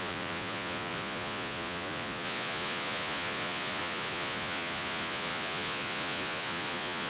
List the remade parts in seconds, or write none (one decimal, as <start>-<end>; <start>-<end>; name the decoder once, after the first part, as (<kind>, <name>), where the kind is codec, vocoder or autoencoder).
0.0-7.1 (vocoder, Vocos)